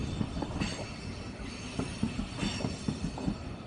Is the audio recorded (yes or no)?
yes